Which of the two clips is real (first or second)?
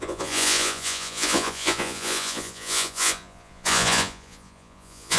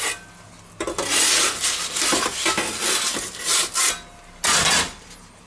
second